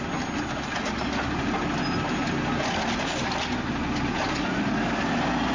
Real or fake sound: real